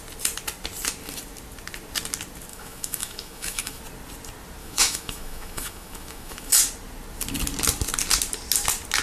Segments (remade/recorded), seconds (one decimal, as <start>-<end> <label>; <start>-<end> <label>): 0.0-2.5 recorded; 2.5-3.8 remade; 3.8-4.6 recorded; 4.6-6.5 remade; 6.5-9.0 recorded